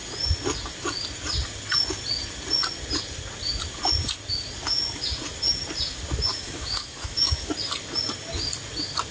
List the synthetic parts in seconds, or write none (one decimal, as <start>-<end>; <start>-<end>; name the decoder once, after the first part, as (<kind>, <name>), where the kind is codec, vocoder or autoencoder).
6.3-7.5 (autoencoder, DAC-VAE)